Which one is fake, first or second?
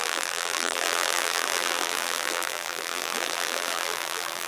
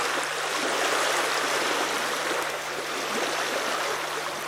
first